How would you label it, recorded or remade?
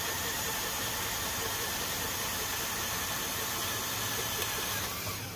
remade